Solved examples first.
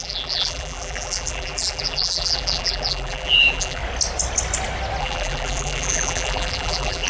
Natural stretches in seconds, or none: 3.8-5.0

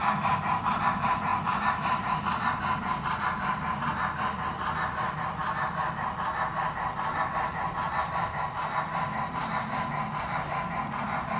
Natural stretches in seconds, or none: 0.0-11.4

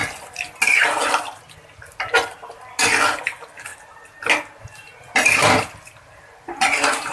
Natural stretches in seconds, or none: 0.0-2.8; 3.7-4.6